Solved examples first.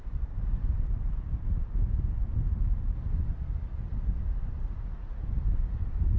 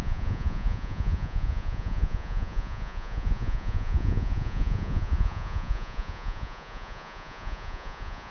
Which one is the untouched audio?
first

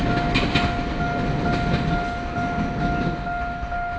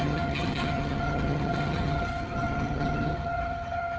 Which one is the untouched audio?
first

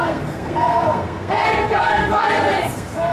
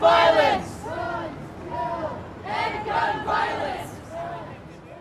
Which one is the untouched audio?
second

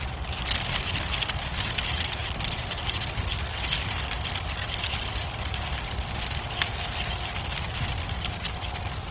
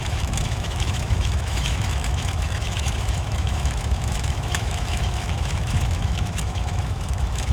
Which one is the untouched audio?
first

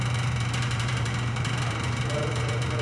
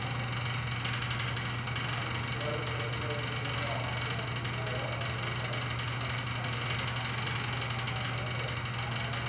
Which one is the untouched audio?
second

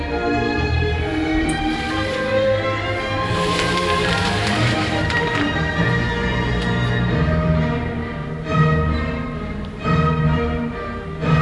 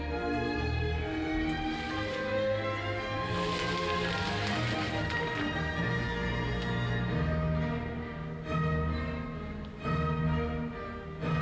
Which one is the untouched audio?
second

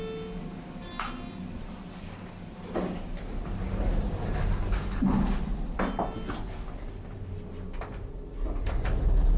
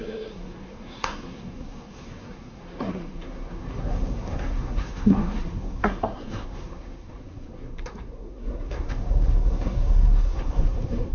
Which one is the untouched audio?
first